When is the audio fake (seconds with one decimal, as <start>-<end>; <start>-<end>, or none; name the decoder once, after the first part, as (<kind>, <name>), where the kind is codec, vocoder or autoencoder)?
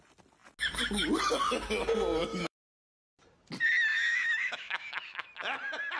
2.2-3.0 (autoencoder, DAC-VAE); 3.9-5.3